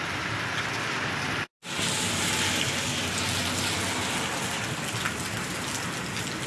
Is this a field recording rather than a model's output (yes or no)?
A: yes